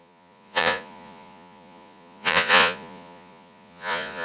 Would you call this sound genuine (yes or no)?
no